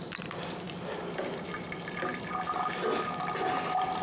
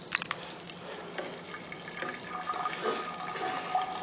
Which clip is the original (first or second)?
second